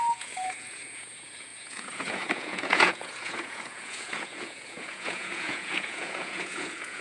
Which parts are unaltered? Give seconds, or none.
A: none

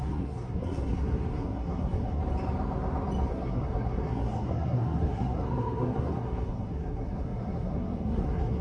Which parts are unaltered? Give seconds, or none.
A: 2.2-3.3